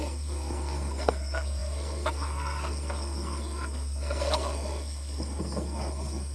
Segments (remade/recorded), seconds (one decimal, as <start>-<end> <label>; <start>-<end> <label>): 0.0-6.3 remade